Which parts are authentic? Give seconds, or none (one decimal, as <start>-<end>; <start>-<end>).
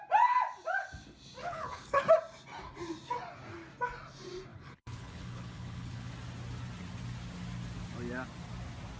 0.0-1.4; 2.0-4.5; 6.1-9.0